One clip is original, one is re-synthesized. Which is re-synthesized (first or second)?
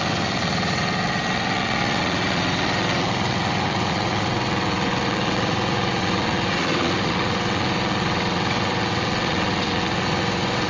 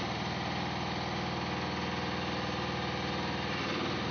first